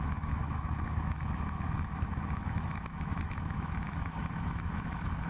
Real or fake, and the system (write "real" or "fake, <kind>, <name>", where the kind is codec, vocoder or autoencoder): fake, autoencoder, DAC-VAE